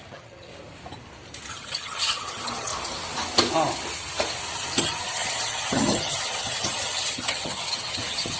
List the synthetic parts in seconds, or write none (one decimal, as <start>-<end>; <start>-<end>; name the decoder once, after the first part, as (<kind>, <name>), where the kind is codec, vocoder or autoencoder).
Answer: 0.0-0.5 (vocoder, HiFi-GAN); 1.5-2.7; 4.8-8.4